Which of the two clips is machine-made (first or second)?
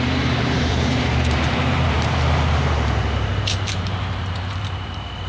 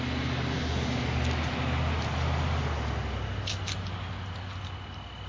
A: first